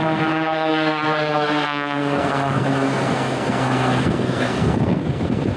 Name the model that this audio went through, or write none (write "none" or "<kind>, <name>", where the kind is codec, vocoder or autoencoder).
codec, SNAC